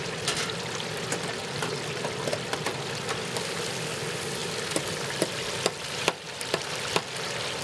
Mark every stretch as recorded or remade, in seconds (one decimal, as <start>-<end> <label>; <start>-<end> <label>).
0.0-7.6 recorded